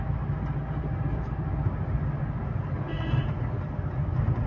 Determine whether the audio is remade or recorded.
recorded